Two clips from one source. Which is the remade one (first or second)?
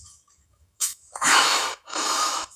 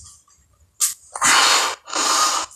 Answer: first